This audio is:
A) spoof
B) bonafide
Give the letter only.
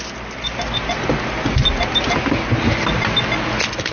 B